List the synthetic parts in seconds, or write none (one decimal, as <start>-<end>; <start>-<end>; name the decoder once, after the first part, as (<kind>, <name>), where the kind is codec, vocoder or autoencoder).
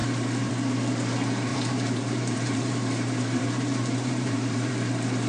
0.0-0.5 (vocoder, BigVGAN v2); 1.5-4.7